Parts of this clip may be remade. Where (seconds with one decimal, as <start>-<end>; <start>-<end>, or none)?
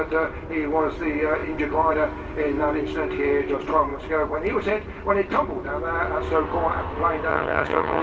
7.3-8.0